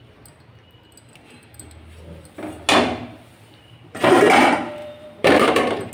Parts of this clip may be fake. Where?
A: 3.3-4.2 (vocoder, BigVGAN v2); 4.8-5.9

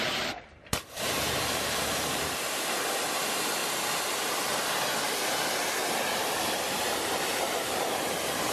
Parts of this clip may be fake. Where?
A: 0.0-3.6 (vocoder, BigVGAN v2); 6.2-8.5